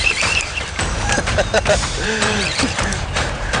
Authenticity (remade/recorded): remade